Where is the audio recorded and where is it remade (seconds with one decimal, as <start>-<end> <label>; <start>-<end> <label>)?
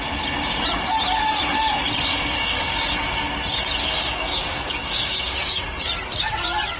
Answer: 0.0-2.1 recorded; 2.1-2.7 remade; 2.7-3.8 recorded; 3.8-5.6 remade; 5.6-6.8 recorded